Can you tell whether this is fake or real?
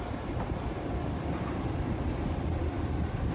real